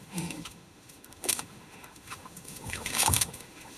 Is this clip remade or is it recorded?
remade